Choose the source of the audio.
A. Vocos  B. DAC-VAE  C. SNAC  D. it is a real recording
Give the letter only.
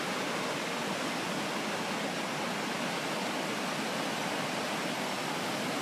D